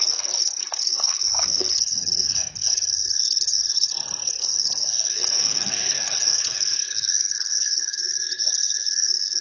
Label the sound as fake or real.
fake